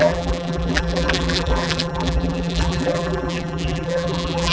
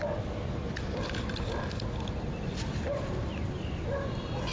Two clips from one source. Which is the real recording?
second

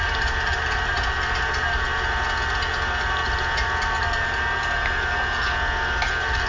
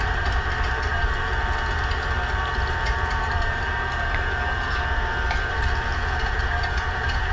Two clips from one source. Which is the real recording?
first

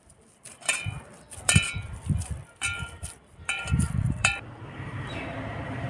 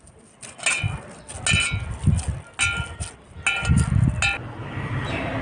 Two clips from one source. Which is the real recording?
second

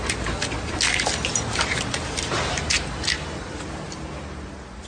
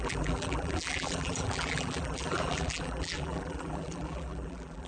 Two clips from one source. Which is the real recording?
first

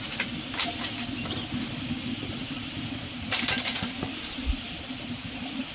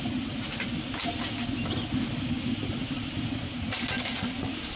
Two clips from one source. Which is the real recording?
second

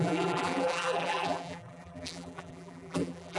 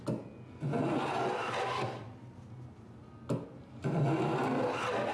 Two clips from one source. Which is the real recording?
second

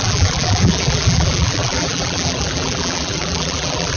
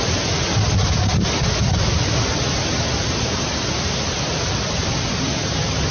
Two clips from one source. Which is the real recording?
second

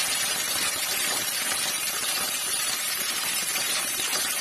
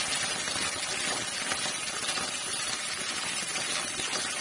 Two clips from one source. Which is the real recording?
second